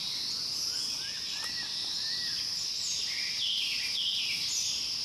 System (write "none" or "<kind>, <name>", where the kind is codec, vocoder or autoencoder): none